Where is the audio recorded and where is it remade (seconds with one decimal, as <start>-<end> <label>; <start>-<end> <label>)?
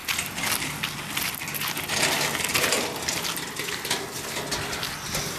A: 0.0-5.4 recorded